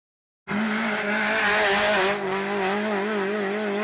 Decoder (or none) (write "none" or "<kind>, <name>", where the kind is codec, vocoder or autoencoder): none